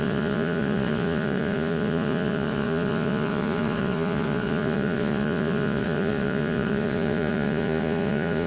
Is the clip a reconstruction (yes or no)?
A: yes